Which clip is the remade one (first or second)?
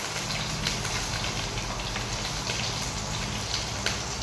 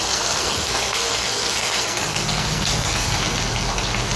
second